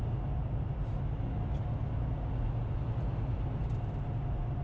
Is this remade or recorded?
recorded